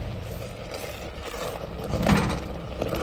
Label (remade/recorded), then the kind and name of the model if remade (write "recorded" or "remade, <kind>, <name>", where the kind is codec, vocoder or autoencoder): recorded